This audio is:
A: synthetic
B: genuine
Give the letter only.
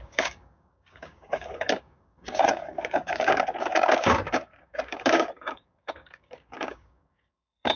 A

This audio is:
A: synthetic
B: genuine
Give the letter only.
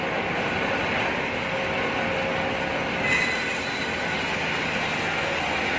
B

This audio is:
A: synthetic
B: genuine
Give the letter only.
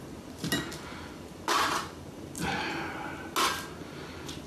B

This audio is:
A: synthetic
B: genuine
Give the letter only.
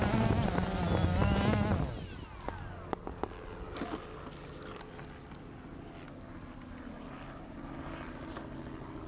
B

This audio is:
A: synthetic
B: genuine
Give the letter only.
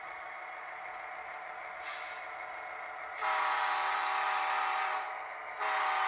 B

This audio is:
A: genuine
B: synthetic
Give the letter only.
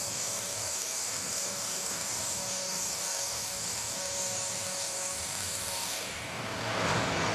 B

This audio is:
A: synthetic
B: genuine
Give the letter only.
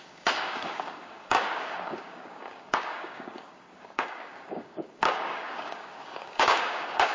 A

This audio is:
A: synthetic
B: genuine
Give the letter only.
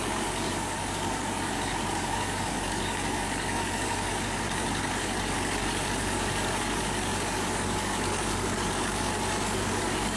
A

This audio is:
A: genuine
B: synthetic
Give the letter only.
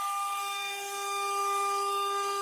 B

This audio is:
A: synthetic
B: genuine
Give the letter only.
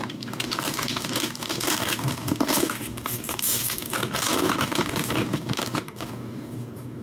A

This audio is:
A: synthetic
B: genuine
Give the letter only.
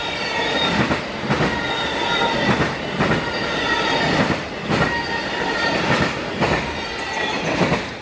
B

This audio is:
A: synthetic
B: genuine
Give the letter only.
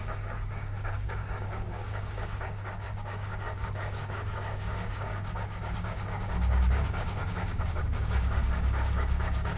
A